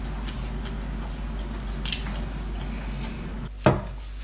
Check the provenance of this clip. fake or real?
real